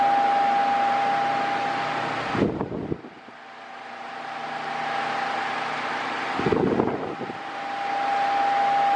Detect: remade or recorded recorded